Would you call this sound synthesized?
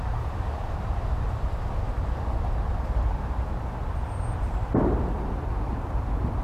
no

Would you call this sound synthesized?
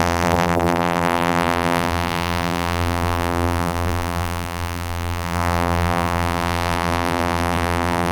yes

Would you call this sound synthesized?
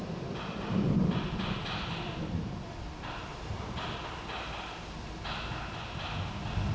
yes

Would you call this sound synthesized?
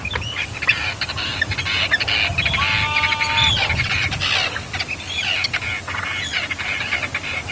no